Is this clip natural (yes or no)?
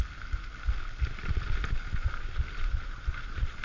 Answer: yes